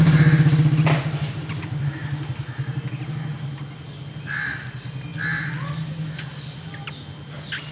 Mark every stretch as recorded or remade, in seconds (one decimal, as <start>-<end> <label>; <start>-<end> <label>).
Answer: 0.0-7.7 recorded